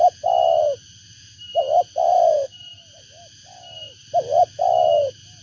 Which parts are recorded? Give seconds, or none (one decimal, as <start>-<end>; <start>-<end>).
0.0-5.4